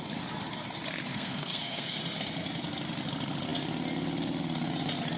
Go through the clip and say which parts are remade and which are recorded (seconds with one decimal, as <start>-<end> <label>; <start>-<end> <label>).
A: 0.0-1.1 recorded; 1.1-2.0 remade; 2.0-5.2 recorded